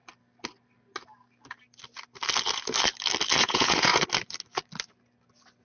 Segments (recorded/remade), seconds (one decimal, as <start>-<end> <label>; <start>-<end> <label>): 0.0-3.4 recorded; 3.4-3.9 remade; 3.9-5.6 recorded